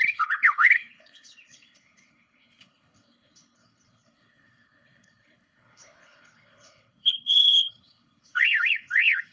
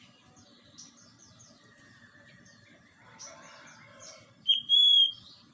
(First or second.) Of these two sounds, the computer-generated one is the first